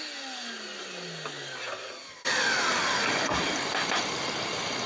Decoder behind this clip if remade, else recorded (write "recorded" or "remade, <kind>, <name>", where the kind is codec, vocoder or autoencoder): recorded